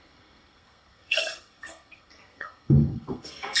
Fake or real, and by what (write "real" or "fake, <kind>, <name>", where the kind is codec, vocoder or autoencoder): fake, codec, SNAC